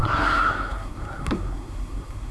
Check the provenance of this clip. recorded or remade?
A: remade